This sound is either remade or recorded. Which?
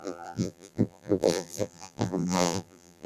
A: remade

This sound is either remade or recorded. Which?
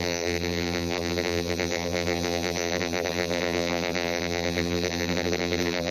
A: remade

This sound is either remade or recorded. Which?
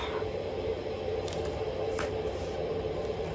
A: remade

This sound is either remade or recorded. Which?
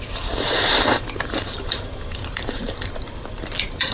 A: remade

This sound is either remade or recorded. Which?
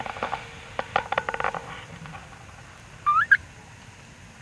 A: recorded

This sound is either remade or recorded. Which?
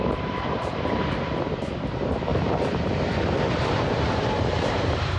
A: remade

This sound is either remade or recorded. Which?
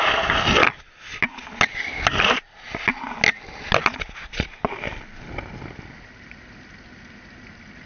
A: recorded